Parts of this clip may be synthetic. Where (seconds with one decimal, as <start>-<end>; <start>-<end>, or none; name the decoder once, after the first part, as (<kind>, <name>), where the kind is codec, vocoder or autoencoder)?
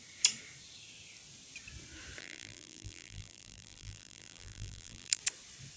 2.2-5.2 (vocoder, BigVGAN v2)